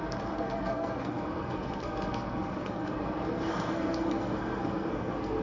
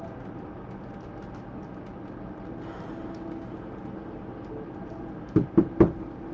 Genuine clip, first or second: second